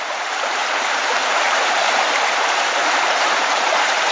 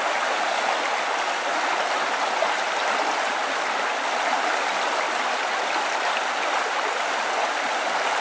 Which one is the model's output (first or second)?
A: first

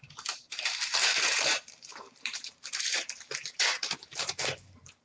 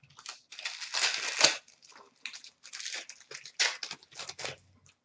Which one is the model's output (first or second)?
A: first